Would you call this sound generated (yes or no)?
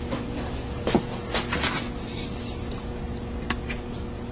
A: no